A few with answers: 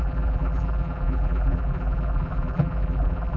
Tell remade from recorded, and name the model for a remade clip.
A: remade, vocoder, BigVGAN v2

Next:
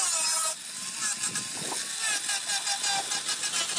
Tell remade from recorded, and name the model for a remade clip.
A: recorded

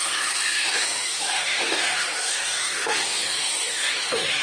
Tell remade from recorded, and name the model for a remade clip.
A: remade, autoencoder, DAC-VAE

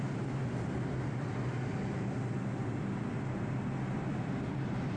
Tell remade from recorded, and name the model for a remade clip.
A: recorded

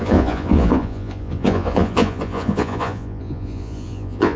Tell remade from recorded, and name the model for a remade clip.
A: remade, vocoder, Vocos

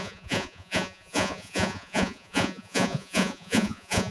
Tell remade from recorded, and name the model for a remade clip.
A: remade, vocoder, Vocos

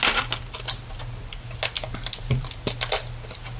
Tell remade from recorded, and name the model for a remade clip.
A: recorded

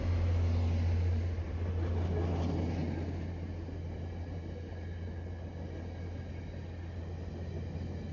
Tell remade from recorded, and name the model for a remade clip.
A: recorded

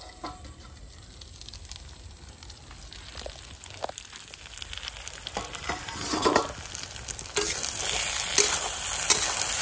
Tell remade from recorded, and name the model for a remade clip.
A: recorded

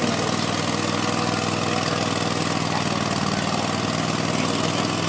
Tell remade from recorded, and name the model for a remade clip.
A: recorded